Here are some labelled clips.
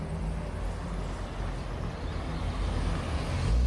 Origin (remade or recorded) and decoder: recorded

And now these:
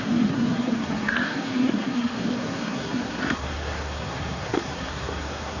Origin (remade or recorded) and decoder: remade, codec, SNAC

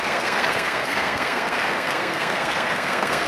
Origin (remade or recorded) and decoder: remade, codec, SNAC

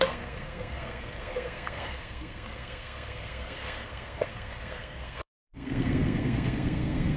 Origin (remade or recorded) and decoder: remade, codec, SNAC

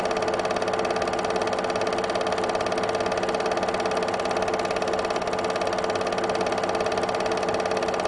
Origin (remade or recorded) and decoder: recorded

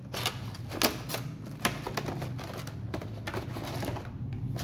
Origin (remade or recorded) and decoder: recorded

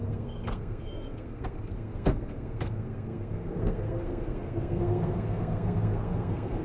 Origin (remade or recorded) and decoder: remade, codec, SNAC